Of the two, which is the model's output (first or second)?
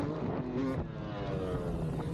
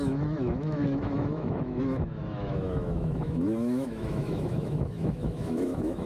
second